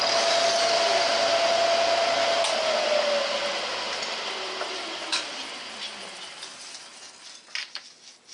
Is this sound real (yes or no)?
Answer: yes